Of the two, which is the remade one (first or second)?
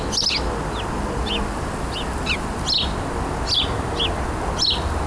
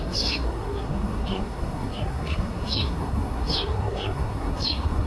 second